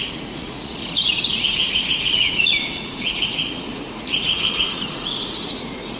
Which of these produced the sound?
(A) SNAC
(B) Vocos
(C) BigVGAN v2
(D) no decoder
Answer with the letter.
B